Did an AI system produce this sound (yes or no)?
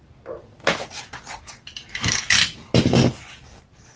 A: no